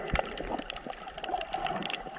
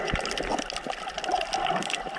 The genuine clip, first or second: second